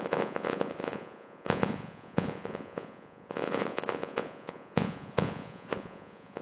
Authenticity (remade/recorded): remade